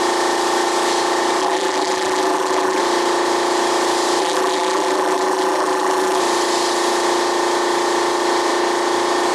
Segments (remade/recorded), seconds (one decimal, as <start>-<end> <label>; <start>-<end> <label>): 0.0-1.4 recorded; 1.4-2.8 remade; 2.8-4.2 recorded; 4.2-6.2 remade; 6.2-9.3 recorded